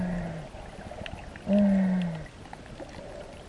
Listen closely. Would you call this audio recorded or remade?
recorded